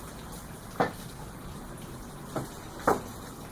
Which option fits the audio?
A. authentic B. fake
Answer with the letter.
A